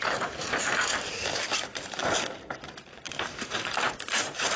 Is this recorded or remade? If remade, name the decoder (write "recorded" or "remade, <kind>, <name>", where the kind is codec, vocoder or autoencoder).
remade, vocoder, BigVGAN v2